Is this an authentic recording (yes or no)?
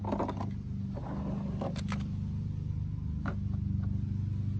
yes